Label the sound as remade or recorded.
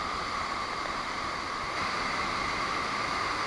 recorded